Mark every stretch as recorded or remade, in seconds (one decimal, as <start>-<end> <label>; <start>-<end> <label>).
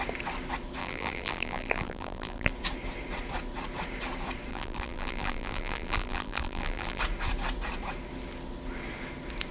0.0-0.8 recorded; 0.8-2.5 remade; 2.5-4.5 recorded; 4.5-7.0 remade; 7.0-9.5 recorded